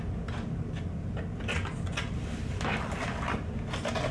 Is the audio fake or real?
real